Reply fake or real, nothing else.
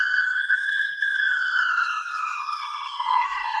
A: fake